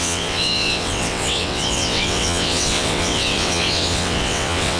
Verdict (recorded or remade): remade